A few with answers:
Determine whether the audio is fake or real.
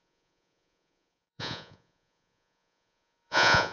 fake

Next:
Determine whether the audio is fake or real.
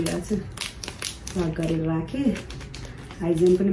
real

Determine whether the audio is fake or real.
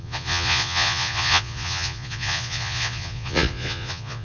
fake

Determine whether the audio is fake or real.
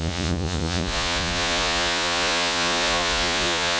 fake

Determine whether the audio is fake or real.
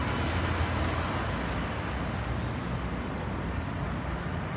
real